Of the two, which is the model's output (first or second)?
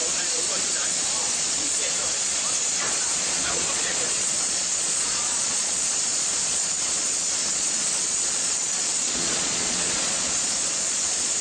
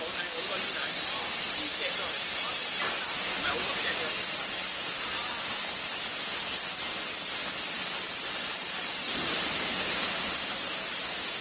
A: first